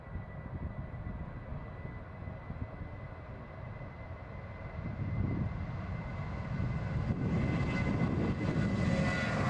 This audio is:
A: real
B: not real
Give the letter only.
A